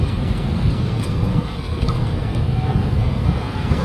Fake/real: fake